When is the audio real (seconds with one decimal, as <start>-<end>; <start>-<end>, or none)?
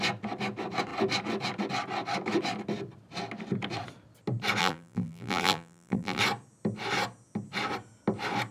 0.0-4.6; 6.2-8.5